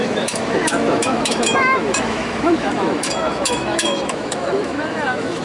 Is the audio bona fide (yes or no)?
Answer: no